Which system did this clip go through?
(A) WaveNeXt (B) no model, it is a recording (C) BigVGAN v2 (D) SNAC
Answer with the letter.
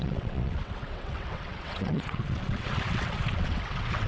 A